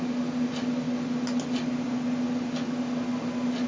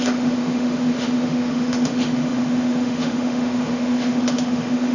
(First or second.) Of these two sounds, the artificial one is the second